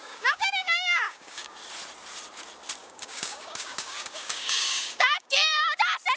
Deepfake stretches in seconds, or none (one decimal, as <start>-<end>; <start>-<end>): 0.0-1.5; 2.8-5.8